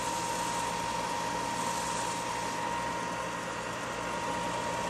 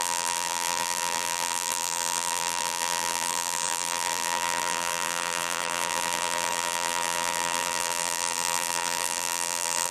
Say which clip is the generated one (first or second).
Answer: second